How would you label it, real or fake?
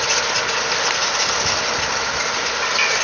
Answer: real